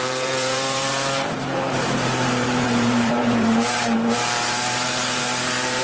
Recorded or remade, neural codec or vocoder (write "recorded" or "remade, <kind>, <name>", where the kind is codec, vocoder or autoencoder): remade, vocoder, BigVGAN v2